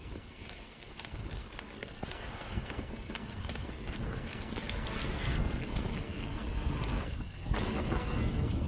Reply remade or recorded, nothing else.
remade